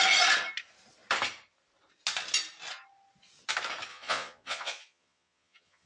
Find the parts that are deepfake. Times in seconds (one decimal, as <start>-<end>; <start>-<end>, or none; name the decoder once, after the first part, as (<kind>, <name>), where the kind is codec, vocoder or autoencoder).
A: 3.9-5.9 (vocoder, Vocos)